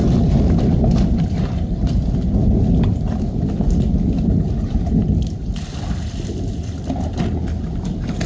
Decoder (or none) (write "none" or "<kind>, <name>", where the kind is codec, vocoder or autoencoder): none